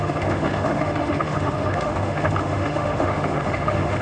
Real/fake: fake